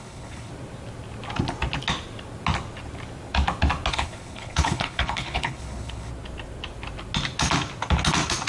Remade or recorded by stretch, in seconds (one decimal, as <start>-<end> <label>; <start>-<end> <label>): 0.0-0.5 remade; 0.5-3.9 recorded; 3.9-6.1 remade; 6.1-8.5 recorded